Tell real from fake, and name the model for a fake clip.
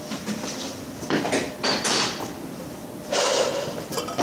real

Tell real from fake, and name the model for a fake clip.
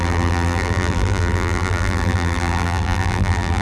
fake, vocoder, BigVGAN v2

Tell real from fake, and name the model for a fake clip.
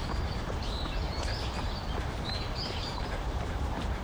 fake, vocoder, BigVGAN v2